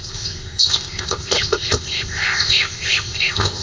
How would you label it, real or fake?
fake